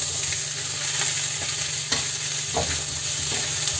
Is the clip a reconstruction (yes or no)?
no